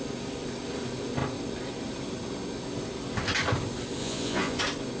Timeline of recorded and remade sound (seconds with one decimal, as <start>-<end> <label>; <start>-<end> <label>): 0.0-4.0 recorded; 4.0-4.6 remade; 4.6-5.0 recorded